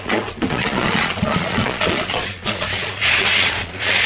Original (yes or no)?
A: no